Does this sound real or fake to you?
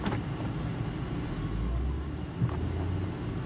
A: real